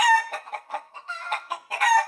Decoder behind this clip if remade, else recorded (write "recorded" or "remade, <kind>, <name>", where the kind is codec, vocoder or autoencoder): remade, codec, SNAC